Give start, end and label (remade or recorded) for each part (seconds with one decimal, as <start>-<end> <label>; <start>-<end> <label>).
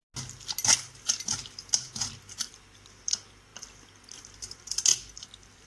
0.0-2.5 recorded; 2.5-3.5 remade; 3.5-4.2 recorded; 4.2-5.7 remade